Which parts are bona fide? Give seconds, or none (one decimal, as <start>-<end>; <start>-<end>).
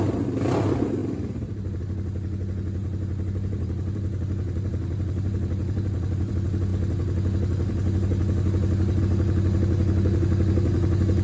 0.0-2.8; 6.3-11.2